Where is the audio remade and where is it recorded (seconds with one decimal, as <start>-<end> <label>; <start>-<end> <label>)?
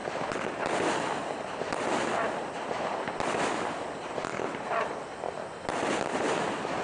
0.0-6.8 recorded